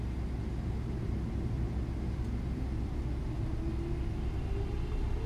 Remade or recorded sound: recorded